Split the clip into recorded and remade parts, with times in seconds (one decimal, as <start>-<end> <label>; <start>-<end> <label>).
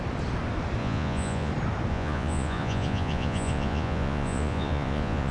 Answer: 0.0-0.8 recorded; 0.8-1.5 remade; 1.5-1.9 recorded; 1.9-5.3 remade